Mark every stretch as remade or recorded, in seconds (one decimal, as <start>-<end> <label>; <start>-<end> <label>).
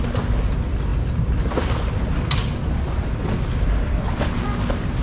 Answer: 0.0-5.0 recorded